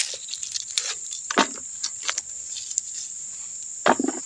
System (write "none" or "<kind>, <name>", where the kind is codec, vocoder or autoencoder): none